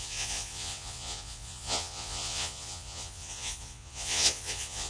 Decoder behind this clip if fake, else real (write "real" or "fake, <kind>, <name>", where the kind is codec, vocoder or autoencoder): fake, vocoder, Vocos